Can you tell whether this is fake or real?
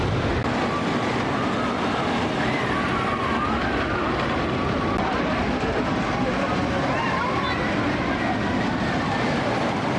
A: real